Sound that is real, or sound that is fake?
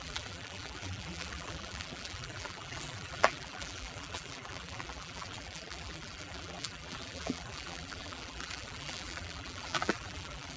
fake